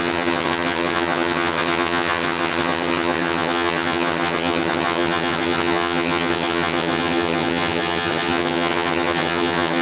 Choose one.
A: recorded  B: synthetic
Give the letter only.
B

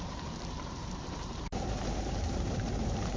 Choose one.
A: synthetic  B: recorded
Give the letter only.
A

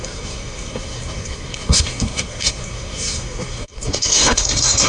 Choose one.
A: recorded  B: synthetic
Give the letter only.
B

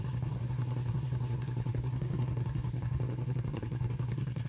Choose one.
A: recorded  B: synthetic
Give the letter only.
B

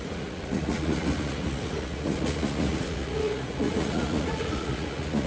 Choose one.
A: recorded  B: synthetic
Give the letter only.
B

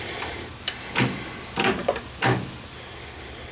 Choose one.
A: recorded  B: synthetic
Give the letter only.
A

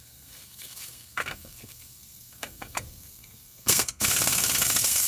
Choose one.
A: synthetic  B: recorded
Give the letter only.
A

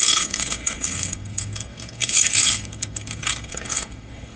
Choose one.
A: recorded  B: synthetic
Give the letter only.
B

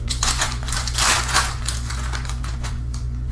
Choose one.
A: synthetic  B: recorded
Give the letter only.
A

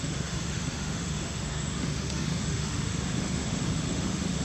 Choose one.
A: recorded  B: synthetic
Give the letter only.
B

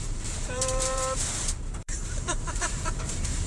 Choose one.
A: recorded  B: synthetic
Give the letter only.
B